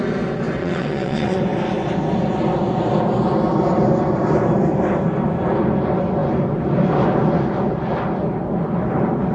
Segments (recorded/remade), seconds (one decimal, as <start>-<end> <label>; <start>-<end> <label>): 0.0-0.6 recorded; 0.6-1.4 remade; 1.4-9.3 recorded